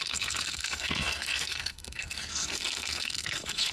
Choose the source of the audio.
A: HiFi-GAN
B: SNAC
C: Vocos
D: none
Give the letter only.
B